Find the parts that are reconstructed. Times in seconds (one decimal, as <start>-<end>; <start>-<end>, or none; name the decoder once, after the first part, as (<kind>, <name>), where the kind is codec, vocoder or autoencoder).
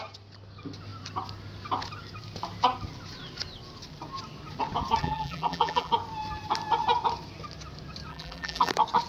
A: 5.0-5.9 (vocoder, BigVGAN v2); 8.1-8.7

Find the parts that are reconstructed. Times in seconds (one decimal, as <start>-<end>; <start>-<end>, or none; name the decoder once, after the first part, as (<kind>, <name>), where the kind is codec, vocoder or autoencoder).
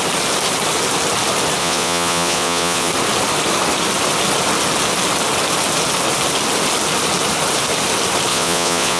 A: 1.6-2.9 (vocoder, Vocos); 8.3-9.0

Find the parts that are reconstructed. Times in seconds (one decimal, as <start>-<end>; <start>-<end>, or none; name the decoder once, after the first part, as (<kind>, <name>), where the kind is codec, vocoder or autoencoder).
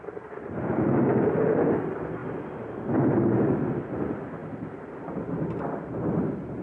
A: 4.4-5.1 (vocoder, BigVGAN v2)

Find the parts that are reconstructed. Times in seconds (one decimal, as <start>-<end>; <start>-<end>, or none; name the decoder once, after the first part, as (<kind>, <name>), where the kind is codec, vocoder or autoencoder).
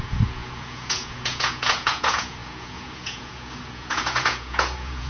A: 0.0-5.1 (vocoder, Vocos)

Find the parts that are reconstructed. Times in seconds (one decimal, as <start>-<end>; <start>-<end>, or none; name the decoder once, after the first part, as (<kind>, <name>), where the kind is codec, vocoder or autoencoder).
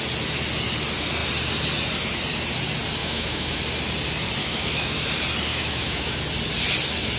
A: 3.0-3.6 (autoencoder, DAC-VAE); 4.4-5.0; 5.5-6.2